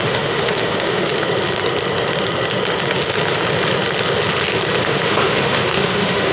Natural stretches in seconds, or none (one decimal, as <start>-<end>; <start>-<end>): 1.1-4.8